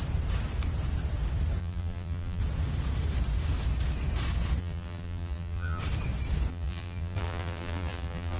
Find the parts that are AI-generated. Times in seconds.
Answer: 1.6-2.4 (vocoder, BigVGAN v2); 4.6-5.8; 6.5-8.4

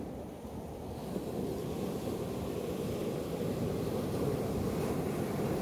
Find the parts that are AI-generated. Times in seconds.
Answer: none